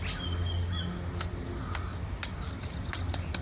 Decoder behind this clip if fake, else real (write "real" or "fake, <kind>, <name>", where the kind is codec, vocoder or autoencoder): real